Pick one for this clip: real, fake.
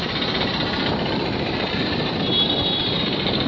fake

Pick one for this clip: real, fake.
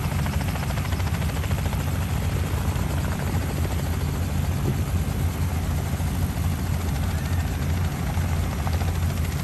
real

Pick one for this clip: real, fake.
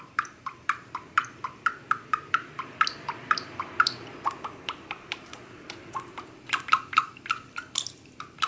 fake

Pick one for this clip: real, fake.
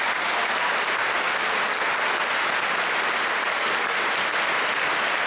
real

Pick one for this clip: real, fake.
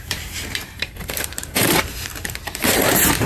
fake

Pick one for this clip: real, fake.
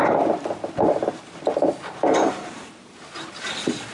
fake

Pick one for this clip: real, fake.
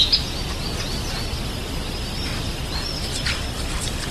real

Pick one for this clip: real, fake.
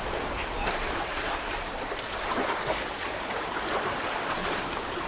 fake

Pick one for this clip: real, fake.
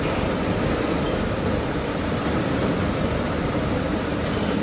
fake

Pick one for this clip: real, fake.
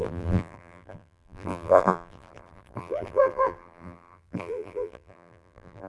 fake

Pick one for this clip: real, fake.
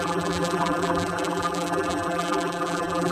fake